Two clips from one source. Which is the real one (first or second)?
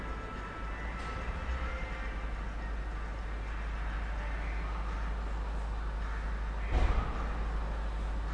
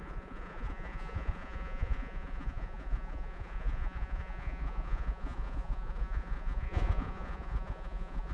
first